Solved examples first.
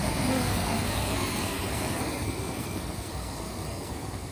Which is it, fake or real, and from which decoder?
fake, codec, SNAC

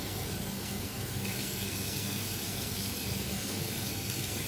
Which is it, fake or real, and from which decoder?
fake, codec, SNAC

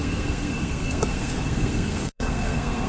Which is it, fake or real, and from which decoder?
fake, codec, SNAC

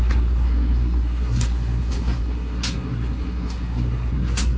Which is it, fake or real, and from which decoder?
fake, codec, SNAC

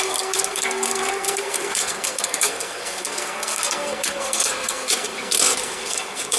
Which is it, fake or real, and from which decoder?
fake, codec, SNAC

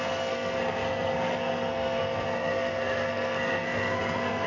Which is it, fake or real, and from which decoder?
fake, codec, SNAC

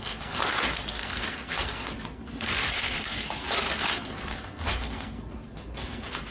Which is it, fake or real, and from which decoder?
fake, codec, SNAC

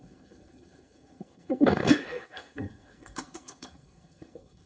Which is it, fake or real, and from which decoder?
fake, codec, SNAC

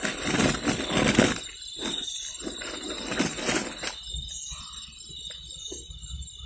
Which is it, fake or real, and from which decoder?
real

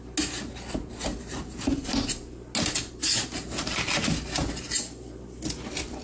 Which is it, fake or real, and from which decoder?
real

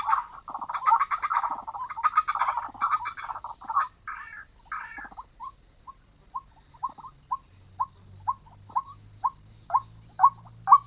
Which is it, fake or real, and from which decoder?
real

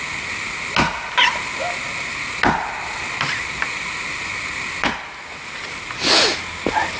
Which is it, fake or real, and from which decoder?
real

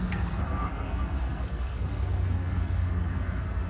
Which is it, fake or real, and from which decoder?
fake, codec, SNAC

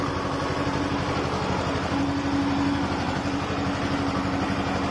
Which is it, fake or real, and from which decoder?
real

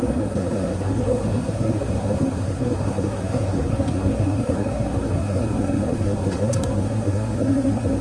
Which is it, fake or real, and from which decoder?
fake, codec, SNAC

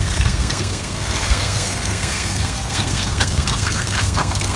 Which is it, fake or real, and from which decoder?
fake, codec, SNAC